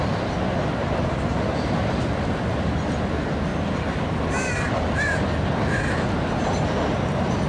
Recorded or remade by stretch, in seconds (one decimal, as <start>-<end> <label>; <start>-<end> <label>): 0.0-3.5 recorded; 3.5-4.7 remade; 4.7-7.5 recorded